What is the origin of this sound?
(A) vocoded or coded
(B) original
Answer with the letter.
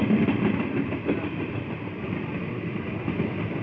A